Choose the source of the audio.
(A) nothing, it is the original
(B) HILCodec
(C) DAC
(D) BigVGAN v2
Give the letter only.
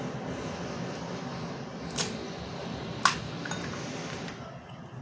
A